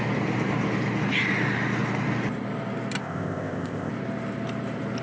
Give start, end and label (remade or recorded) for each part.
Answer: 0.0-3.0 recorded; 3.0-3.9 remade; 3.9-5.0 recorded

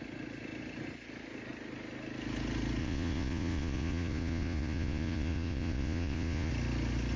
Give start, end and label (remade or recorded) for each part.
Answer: 0.0-2.8 recorded; 2.8-6.5 remade; 6.5-7.2 recorded

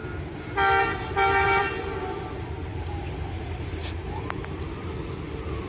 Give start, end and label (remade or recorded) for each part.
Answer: 0.0-1.4 recorded; 1.4-5.7 remade

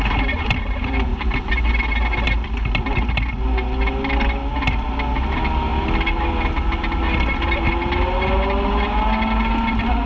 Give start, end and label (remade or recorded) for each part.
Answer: 0.0-1.1 recorded; 1.1-1.7 remade; 1.7-10.1 recorded

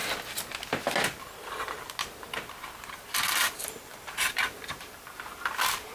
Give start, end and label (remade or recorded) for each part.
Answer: 0.0-3.5 recorded; 3.5-5.9 remade

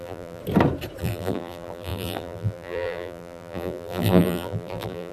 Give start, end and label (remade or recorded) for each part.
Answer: 0.0-0.4 remade; 0.4-1.0 recorded; 1.0-5.1 remade

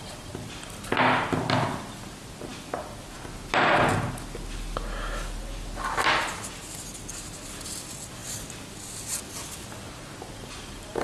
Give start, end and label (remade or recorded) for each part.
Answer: 0.0-11.0 recorded